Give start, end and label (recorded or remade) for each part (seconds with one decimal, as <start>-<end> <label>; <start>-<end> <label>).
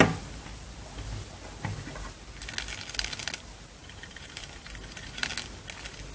0.0-3.8 recorded; 3.8-5.3 remade; 5.3-6.1 recorded